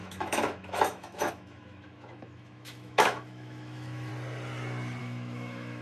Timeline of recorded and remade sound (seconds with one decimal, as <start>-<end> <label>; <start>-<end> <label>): 0.0-4.1 remade; 4.1-5.0 recorded; 5.0-5.8 remade